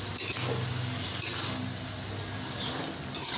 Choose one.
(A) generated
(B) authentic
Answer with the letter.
B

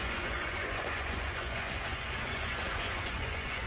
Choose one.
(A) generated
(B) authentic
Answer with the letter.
A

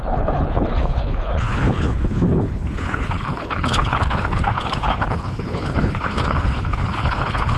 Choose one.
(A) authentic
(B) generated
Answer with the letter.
B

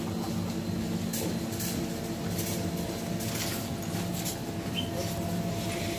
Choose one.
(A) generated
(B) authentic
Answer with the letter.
B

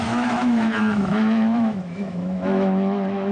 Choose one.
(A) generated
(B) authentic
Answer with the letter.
A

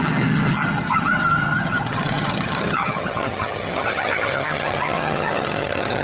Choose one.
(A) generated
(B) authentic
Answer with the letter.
A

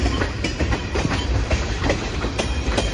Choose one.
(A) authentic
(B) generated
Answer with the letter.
B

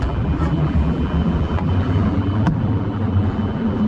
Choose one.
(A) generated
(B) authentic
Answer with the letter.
A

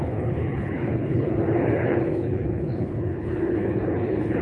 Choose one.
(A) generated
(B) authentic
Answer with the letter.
A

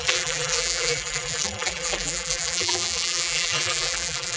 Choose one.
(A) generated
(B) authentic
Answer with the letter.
A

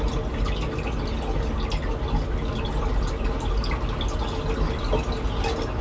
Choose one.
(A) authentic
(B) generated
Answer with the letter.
A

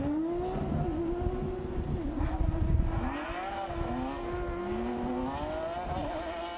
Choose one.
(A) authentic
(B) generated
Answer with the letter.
A